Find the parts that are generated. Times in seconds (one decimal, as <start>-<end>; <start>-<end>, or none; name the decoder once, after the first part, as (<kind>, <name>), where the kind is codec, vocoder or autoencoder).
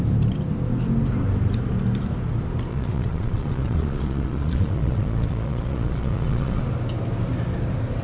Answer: 2.7-6.6 (vocoder, Vocos)